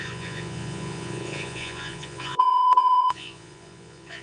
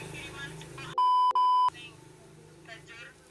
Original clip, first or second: second